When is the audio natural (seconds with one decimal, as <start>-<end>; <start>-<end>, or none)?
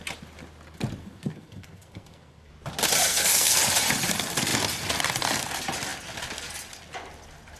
0.0-1.0; 2.5-3.0; 3.6-7.6